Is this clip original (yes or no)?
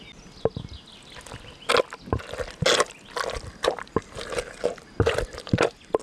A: yes